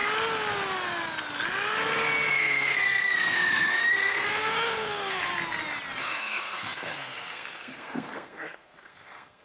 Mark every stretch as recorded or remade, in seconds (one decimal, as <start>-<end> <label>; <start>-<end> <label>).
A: 0.0-2.3 recorded; 2.3-5.3 remade; 5.3-6.0 recorded; 6.0-9.4 remade